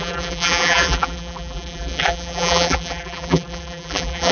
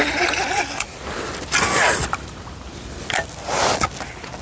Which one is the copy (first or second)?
first